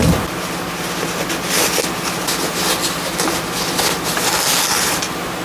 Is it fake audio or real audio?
real